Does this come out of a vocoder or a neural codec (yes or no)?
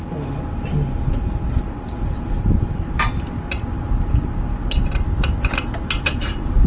no